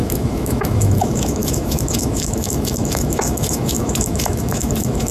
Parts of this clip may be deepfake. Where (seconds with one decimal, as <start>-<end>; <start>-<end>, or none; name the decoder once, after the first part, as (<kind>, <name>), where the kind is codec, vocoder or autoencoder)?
0.0-5.1 (autoencoder, DAC-VAE)